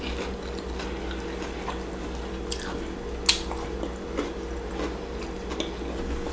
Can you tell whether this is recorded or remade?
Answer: recorded